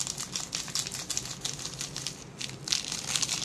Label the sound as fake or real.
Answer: real